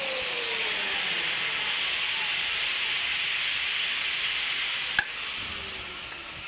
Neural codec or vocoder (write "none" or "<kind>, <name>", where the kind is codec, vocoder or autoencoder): none